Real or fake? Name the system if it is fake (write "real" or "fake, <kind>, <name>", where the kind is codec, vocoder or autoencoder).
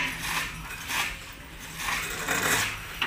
real